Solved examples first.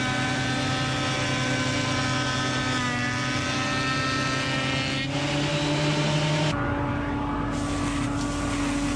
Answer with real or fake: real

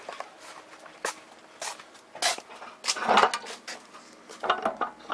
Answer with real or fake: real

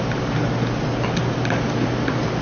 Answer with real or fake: real